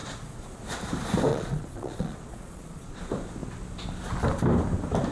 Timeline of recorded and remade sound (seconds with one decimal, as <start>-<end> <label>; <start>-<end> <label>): 0.0-0.6 remade; 0.6-1.3 recorded; 1.3-3.0 remade; 3.0-5.1 recorded